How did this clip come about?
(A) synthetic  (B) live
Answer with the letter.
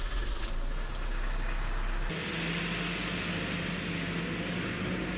B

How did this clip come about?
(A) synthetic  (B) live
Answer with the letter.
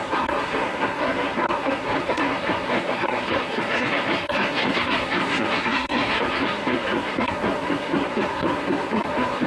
A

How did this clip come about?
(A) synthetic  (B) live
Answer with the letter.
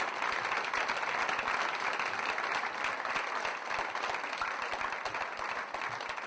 B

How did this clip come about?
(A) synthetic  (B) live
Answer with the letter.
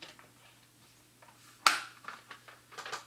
B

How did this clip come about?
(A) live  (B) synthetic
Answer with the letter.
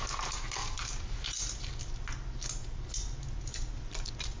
A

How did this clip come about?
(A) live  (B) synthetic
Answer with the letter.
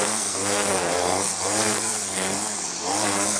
B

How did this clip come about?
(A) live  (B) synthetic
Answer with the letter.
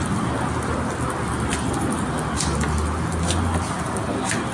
A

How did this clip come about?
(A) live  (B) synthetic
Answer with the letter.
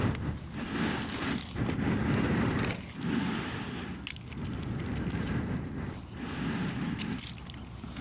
A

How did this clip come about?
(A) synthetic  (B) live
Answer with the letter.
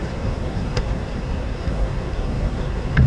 A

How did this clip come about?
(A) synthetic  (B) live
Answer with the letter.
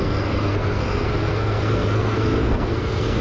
A